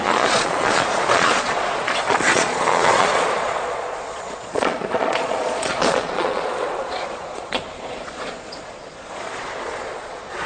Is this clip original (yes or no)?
no